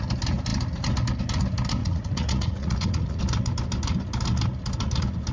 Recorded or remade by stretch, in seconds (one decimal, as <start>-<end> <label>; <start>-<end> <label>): 0.0-1.8 recorded; 1.8-3.2 remade; 3.2-5.3 recorded